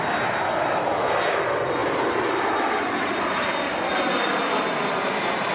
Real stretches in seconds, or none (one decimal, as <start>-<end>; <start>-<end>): 0.0-5.5